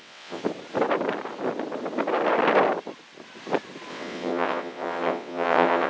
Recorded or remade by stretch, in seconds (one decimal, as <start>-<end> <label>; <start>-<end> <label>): 0.0-0.4 remade; 0.4-3.9 recorded; 3.9-5.9 remade